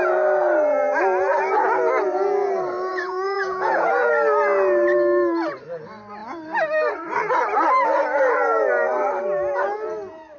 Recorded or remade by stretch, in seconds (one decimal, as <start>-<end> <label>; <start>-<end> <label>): 0.0-2.9 recorded; 2.9-4.1 remade; 4.1-10.4 recorded